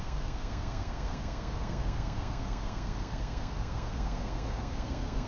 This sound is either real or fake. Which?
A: fake